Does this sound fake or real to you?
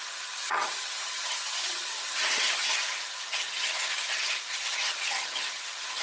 fake